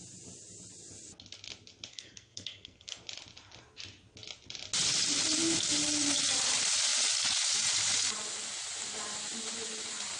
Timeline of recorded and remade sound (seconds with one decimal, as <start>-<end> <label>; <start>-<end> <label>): 0.0-1.9 recorded; 1.9-3.0 remade; 3.0-10.2 recorded